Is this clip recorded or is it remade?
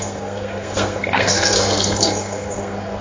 remade